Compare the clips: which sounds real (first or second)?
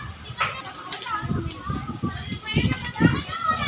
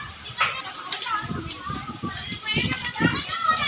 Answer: first